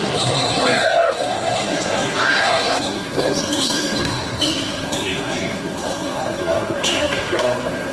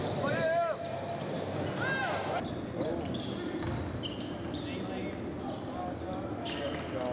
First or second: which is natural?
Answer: second